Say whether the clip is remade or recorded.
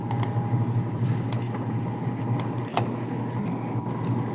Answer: recorded